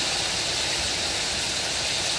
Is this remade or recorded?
recorded